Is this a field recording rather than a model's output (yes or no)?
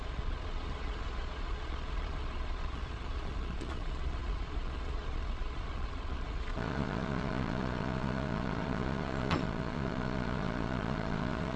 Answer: no